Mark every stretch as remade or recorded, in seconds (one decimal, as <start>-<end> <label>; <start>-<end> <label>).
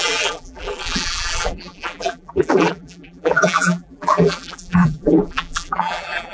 0.0-6.3 remade